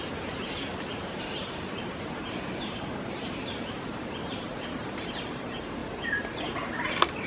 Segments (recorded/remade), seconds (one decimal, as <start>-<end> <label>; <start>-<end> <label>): 0.0-5.8 remade; 5.8-7.3 recorded